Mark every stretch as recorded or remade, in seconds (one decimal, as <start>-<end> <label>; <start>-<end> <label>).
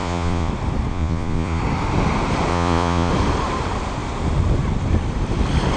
0.0-0.5 remade; 0.5-0.9 recorded; 0.9-1.6 remade; 1.6-2.5 recorded; 2.5-3.1 remade; 3.1-5.8 recorded